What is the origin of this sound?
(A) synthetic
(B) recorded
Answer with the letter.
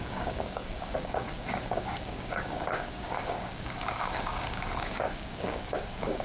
A